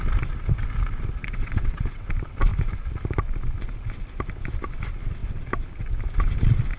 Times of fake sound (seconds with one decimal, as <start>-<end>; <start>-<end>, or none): 1.2-2.1